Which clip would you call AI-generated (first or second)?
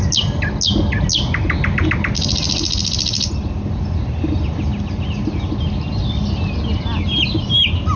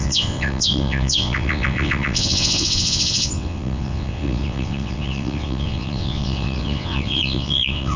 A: second